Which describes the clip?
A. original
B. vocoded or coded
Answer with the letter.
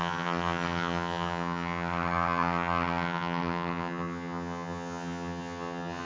B